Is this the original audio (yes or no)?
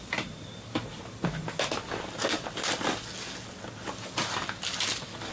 yes